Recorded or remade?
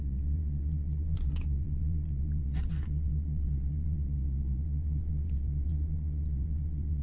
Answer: remade